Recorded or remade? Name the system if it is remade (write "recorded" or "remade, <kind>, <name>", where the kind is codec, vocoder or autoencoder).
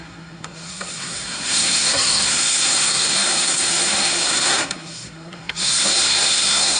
remade, codec, SNAC